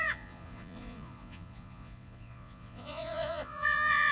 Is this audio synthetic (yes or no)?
yes